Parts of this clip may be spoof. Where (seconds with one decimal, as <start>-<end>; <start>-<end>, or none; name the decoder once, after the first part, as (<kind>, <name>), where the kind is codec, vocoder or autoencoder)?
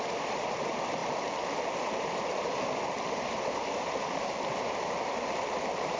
none